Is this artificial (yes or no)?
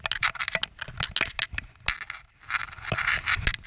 no